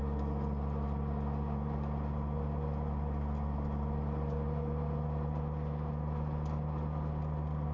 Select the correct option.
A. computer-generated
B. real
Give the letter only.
B